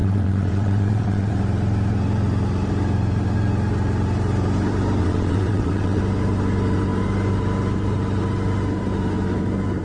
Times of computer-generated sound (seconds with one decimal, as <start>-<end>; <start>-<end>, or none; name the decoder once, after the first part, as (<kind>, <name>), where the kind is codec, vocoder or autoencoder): 0.0-1.3 (vocoder, WaveNeXt); 5.0-6.0

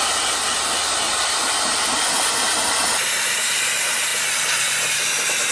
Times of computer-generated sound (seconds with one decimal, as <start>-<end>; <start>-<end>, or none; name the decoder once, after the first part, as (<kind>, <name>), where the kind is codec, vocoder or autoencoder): none

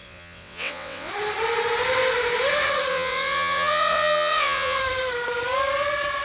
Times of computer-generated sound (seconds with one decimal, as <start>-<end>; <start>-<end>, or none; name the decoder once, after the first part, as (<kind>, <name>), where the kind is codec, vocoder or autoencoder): 0.0-1.1 (vocoder, WaveNeXt); 2.9-4.8

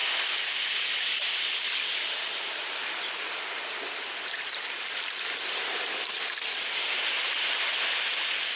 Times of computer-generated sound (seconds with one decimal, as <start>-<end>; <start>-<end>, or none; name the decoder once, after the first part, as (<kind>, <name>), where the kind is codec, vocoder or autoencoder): none

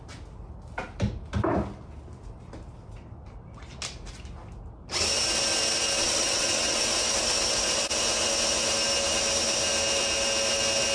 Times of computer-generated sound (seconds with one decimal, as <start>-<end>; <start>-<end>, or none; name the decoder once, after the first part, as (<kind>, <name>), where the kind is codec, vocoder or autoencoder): 6.0-6.8 (vocoder, WaveNeXt)